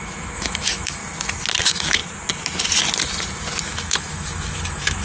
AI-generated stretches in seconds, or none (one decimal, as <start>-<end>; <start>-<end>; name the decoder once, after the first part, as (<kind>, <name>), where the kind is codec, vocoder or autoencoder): 0.0-1.0 (autoencoder, DAC-VAE); 1.6-2.0; 3.6-5.0